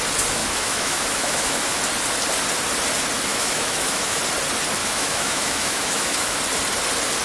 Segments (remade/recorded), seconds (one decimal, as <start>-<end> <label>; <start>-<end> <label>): 0.0-0.4 recorded; 0.4-1.8 remade; 1.8-3.3 recorded; 3.3-4.2 remade; 4.2-4.8 recorded; 4.8-6.4 remade; 6.4-7.2 recorded